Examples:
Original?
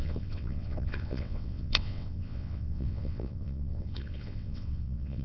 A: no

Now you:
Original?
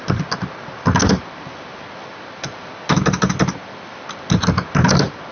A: yes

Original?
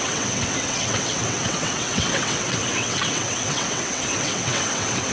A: no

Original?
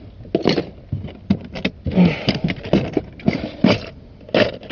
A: yes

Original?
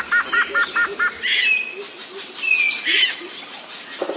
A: yes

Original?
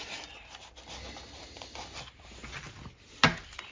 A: yes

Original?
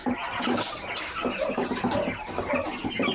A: yes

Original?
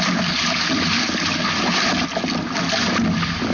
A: yes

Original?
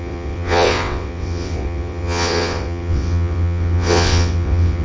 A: no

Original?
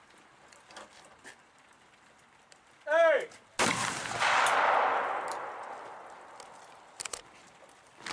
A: yes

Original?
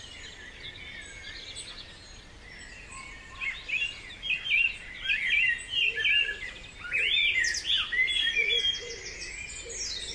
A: yes